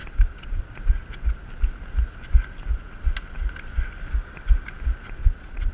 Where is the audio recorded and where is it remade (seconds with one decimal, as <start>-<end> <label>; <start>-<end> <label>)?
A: 0.0-0.6 remade; 0.6-5.2 recorded; 5.2-5.7 remade